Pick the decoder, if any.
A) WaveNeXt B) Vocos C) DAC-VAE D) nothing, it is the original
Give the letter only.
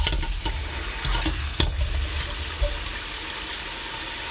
D